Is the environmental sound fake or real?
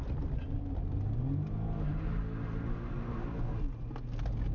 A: real